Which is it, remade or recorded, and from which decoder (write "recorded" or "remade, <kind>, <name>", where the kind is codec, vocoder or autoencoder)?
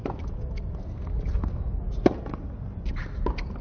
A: recorded